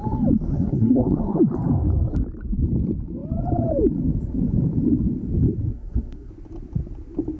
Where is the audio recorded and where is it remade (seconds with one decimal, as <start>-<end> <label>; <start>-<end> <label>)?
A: 0.0-0.5 recorded; 0.5-1.4 remade; 1.4-5.7 recorded; 5.7-6.3 remade; 6.3-7.4 recorded